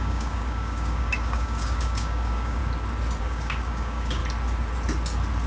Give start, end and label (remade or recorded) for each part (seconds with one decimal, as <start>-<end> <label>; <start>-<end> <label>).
0.0-2.6 remade; 2.6-3.2 recorded; 3.2-4.2 remade; 4.2-5.5 recorded

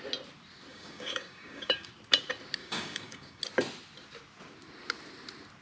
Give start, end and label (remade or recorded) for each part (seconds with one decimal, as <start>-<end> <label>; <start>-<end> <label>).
0.0-0.7 recorded; 0.7-1.9 remade; 1.9-2.6 recorded; 2.6-3.4 remade; 3.4-5.6 recorded

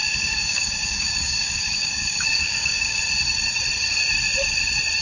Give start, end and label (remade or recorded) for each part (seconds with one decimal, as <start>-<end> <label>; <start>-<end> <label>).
0.0-3.0 remade; 3.0-5.0 recorded

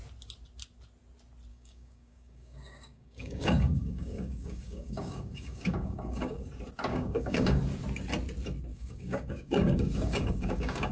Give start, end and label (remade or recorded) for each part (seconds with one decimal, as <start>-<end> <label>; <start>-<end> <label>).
0.0-1.5 recorded; 1.5-6.5 remade; 6.5-6.9 recorded; 6.9-7.6 remade; 7.6-8.7 recorded; 8.7-10.9 remade